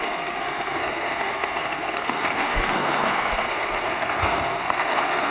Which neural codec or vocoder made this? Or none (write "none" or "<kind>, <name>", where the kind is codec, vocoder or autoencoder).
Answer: codec, SNAC